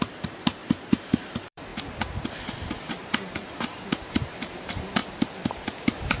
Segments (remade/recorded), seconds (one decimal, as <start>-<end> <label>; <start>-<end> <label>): 0.0-1.7 remade; 1.7-2.8 recorded; 2.8-5.0 remade; 5.0-5.8 recorded; 5.8-6.2 remade